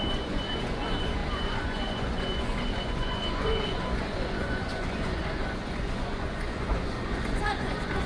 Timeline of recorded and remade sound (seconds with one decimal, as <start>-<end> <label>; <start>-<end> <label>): 0.0-8.1 remade